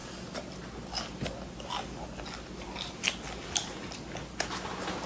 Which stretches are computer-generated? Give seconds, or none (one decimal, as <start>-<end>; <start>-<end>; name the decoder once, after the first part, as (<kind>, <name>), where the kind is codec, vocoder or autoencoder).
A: none